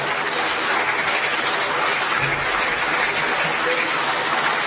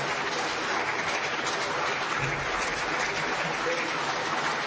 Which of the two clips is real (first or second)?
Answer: first